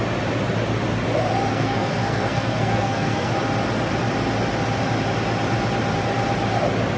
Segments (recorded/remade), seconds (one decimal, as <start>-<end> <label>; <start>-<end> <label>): 0.0-1.5 recorded; 1.5-3.3 remade; 3.3-7.0 recorded